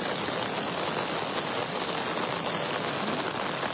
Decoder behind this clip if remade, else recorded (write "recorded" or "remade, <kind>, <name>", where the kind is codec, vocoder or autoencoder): recorded